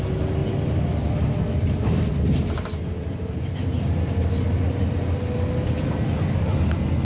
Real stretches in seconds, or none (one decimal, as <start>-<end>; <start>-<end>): 0.0-7.0